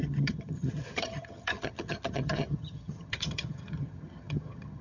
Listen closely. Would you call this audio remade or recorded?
remade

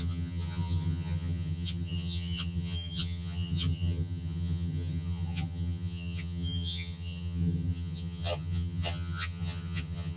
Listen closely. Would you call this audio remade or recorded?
remade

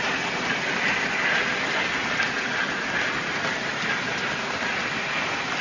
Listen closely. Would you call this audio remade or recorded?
recorded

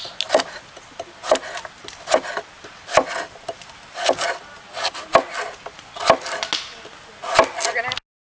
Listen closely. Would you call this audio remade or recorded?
recorded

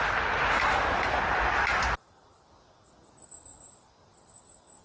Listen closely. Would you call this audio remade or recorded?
recorded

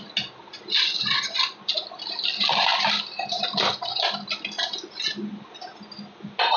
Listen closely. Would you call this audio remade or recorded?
recorded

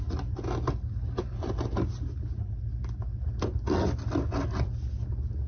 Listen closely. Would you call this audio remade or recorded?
recorded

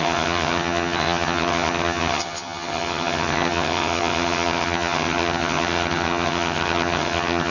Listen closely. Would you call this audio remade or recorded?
remade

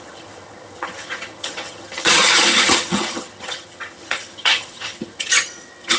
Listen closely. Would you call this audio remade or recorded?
remade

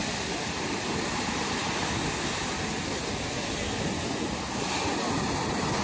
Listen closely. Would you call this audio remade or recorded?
recorded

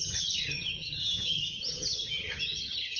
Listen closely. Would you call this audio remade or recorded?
remade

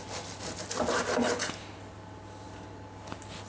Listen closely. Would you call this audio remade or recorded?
recorded